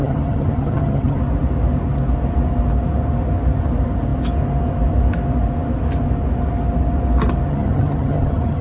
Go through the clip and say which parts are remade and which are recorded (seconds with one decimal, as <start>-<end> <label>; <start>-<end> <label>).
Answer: 0.0-1.2 remade; 1.2-7.5 recorded; 7.5-8.6 remade